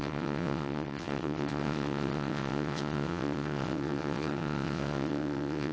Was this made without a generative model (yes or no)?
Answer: no